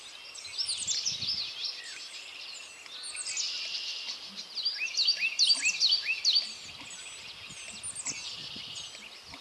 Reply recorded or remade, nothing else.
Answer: recorded